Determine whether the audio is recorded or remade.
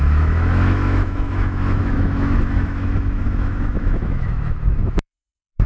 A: remade